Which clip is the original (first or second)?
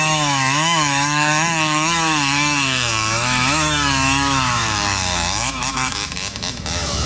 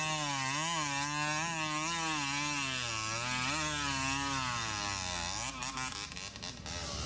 second